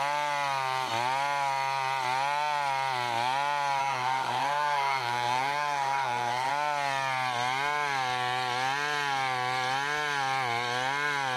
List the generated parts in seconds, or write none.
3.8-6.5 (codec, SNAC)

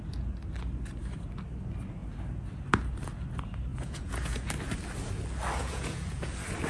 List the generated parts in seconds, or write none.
3.7-4.5 (vocoder, Vocos); 5.6-6.3